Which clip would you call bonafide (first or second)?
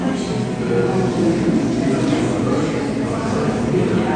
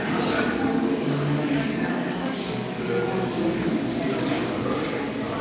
first